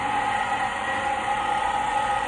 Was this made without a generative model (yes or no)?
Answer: no